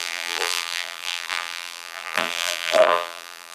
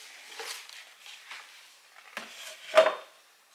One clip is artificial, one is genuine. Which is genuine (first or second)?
second